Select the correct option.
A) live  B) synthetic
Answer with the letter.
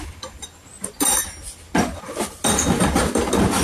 A